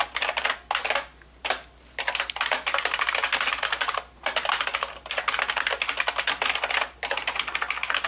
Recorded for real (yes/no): yes